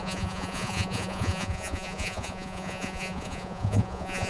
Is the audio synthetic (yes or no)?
yes